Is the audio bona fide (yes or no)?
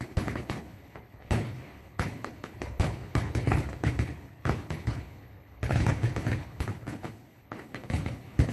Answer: no